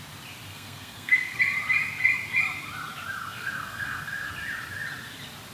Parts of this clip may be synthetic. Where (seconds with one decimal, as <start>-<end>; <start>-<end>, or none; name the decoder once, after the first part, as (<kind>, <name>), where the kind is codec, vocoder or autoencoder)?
0.5-1.4 (codec, SNAC); 3.2-4.3